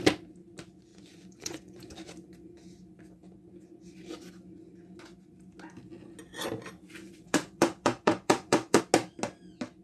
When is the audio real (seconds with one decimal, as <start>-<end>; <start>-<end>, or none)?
0.0-0.9; 1.8-7.0; 8.8-9.8